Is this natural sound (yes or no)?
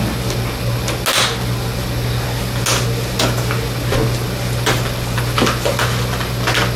yes